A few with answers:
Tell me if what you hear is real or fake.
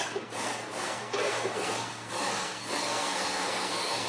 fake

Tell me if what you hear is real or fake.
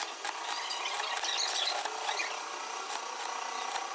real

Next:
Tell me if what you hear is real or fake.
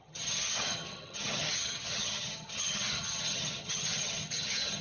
fake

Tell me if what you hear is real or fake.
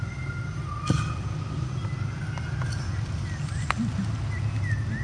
real